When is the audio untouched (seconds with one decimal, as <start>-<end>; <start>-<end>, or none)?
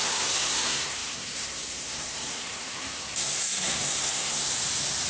4.5-5.1